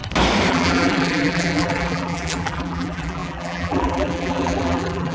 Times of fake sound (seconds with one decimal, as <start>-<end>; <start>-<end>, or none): 0.5-5.1